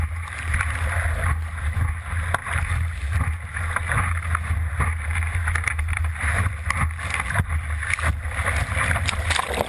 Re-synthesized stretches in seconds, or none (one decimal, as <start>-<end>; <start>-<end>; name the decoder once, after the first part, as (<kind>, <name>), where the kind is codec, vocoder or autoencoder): 8.6-9.1 (vocoder, BigVGAN v2)